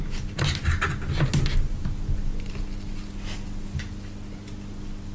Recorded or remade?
recorded